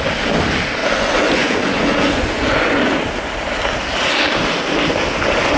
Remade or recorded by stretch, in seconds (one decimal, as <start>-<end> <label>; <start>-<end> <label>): 0.0-0.8 recorded; 0.8-3.0 remade; 3.0-5.6 recorded